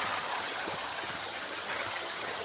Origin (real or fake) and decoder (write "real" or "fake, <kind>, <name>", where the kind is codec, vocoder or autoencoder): fake, vocoder, HiFi-GAN